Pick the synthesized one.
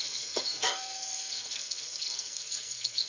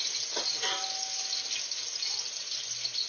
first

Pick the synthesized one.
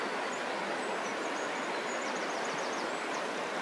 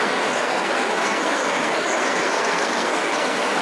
second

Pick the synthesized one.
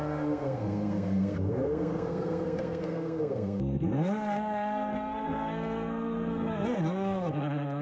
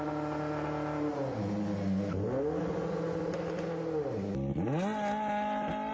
first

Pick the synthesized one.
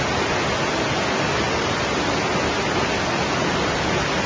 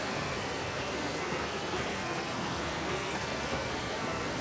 second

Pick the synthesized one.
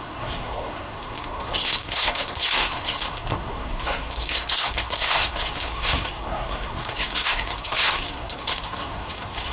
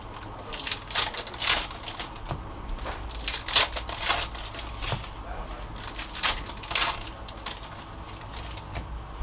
first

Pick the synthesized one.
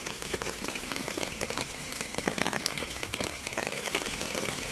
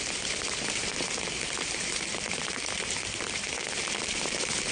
first